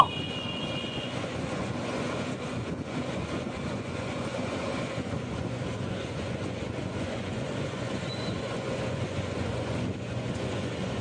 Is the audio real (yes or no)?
no